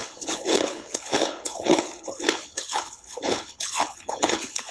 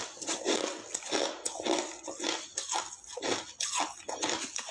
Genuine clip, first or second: second